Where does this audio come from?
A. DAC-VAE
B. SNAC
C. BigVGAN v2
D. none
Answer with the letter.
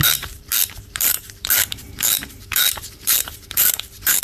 C